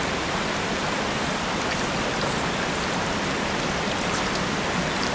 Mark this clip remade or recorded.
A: recorded